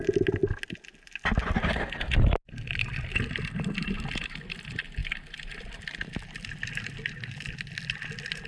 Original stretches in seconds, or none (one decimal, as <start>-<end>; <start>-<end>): 0.0-8.5